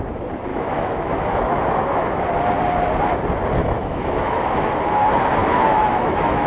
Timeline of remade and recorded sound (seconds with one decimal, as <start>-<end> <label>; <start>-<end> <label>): 0.0-0.5 recorded; 0.5-2.2 remade; 2.2-3.6 recorded; 3.6-4.7 remade; 4.7-5.4 recorded; 5.4-6.5 remade

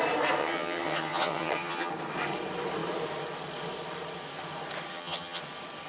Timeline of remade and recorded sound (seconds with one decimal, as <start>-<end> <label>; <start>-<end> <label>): 0.0-0.4 recorded; 0.4-1.9 remade; 1.9-4.9 recorded; 4.9-5.4 remade; 5.4-5.9 recorded